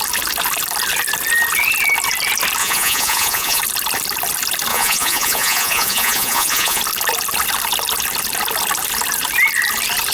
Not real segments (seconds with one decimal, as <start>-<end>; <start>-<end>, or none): 2.6-3.6; 4.7-6.8